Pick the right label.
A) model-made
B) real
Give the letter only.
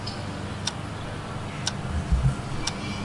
B